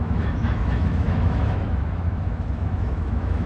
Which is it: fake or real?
fake